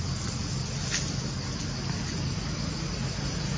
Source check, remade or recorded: recorded